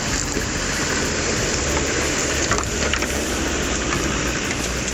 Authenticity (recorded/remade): recorded